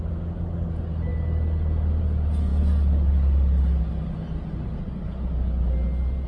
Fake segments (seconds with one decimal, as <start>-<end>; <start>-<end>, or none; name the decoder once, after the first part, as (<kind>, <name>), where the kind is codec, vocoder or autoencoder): none